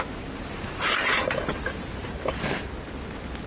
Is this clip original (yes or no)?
yes